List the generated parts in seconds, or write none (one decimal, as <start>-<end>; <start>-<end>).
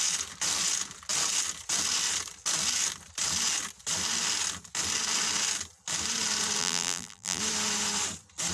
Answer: 6.6-7.4